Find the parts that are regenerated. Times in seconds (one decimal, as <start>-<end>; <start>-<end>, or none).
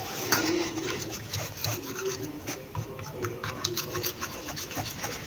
0.0-5.3